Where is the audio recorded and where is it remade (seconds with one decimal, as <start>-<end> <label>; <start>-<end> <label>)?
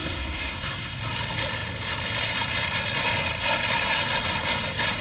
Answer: 0.0-1.0 remade; 1.0-5.0 recorded